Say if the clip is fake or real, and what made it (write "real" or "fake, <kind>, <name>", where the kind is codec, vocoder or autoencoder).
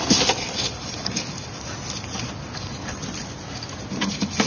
real